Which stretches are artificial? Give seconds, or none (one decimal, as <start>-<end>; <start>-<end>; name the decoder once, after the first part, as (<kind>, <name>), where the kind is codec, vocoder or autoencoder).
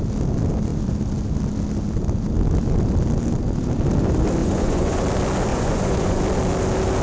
4.4-5.0 (vocoder, Vocos); 5.5-6.2